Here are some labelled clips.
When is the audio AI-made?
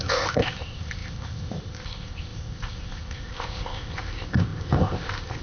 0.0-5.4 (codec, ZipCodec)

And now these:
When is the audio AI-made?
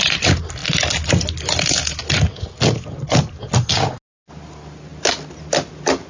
none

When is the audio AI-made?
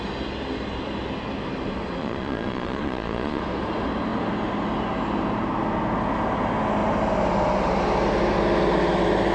2.0-3.4 (vocoder, Vocos)